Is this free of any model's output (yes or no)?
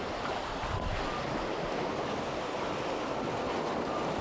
yes